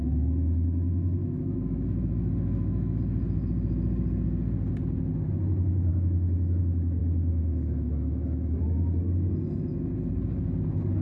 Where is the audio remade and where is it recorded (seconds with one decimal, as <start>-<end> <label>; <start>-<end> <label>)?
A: 0.0-1.2 recorded; 1.2-3.0 remade; 3.0-5.9 recorded; 5.9-6.6 remade; 6.6-7.0 recorded; 7.0-8.6 remade; 8.6-11.0 recorded